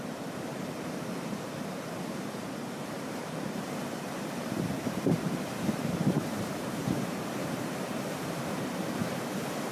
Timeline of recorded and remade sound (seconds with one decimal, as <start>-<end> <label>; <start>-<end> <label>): 0.0-9.0 remade; 9.0-9.7 recorded